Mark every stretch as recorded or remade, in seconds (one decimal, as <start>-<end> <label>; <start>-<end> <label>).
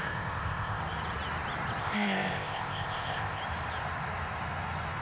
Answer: 0.0-0.8 remade; 0.8-1.8 recorded; 1.8-3.4 remade; 3.4-5.0 recorded